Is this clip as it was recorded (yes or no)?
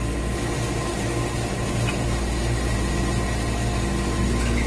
yes